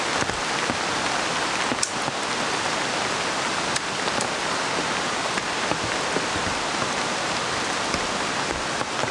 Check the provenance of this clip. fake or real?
real